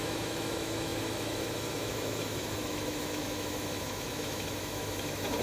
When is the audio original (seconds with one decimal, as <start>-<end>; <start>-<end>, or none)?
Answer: none